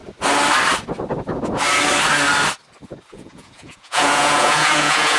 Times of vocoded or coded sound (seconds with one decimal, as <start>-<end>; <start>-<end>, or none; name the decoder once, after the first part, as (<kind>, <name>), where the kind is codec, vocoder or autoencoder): 3.1-5.2 (vocoder, Vocos)